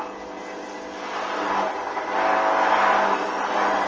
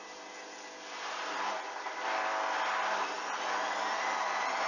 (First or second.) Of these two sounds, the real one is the first